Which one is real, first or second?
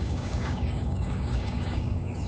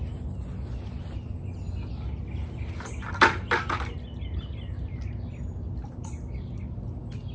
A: second